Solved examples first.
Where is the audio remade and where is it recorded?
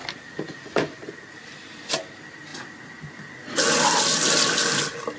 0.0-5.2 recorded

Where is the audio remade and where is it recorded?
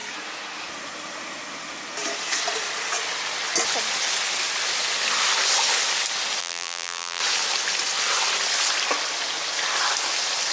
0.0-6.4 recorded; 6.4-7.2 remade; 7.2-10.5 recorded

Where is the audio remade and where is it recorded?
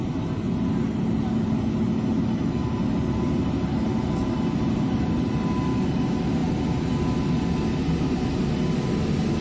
0.0-9.4 recorded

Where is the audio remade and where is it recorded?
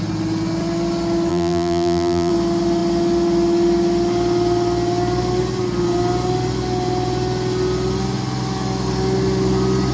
0.0-1.3 recorded; 1.3-2.3 remade; 2.3-9.9 recorded